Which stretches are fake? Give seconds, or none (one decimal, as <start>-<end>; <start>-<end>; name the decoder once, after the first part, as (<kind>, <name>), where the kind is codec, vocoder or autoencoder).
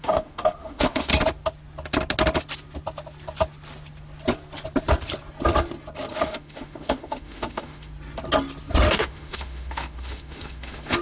0.0-1.1 (autoencoder, DAC-VAE); 6.1-7.9; 8.9-11.0